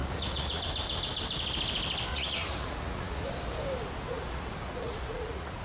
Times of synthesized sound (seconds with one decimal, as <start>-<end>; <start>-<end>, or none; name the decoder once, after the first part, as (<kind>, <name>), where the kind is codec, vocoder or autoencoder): 0.0-0.6 (vocoder, Vocos); 2.1-3.3; 4.1-5.6